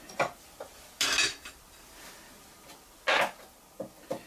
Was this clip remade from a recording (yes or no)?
no